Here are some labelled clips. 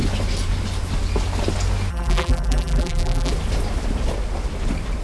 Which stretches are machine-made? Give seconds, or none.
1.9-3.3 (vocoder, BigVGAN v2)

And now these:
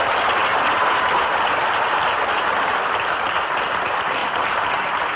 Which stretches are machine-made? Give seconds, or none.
none

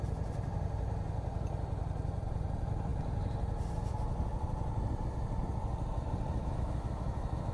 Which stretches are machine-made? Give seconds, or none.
6.4-7.5 (autoencoder, DAC-VAE)